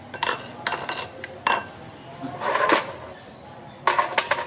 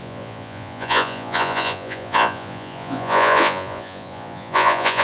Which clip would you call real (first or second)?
first